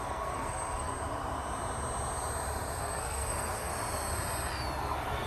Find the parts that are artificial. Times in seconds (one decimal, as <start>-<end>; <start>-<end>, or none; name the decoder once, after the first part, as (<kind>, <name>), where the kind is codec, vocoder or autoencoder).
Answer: 0.0-0.9 (codec, SNAC); 2.8-3.7; 4.8-5.3